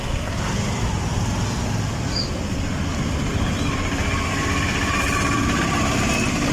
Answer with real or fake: real